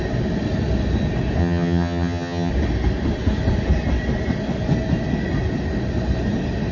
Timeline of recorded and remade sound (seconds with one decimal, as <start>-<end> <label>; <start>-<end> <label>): 0.0-1.4 recorded; 1.4-2.5 remade; 2.5-6.7 recorded